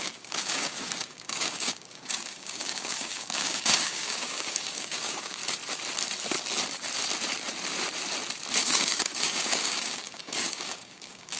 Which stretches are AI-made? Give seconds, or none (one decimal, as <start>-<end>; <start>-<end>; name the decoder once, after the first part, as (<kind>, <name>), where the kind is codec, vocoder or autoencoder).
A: 0.0-5.4 (codec, DAC); 8.6-11.4